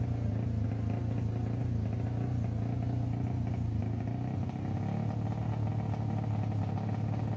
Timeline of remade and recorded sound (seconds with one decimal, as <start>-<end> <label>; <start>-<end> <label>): 0.0-7.4 recorded